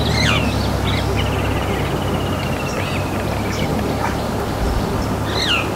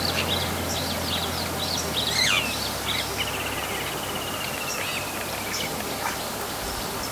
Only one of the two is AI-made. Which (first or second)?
first